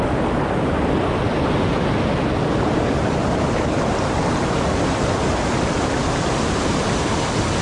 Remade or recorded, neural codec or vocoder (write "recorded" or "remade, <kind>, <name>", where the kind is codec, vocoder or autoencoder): recorded